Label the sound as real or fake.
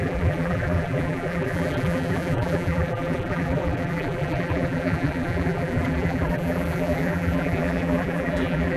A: fake